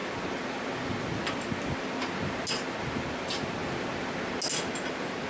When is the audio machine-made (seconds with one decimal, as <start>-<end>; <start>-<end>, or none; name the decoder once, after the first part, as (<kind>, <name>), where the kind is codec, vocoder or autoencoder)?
none